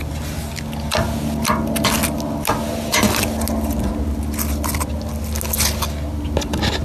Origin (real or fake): real